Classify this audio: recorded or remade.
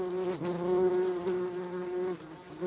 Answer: recorded